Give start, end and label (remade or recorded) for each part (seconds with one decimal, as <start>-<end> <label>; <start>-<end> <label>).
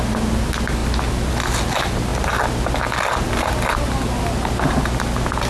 0.0-5.5 recorded